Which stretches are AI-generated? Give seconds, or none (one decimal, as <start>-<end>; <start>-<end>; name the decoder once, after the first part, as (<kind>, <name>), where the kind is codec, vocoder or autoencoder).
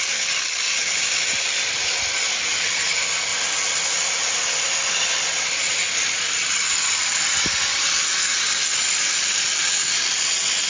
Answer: none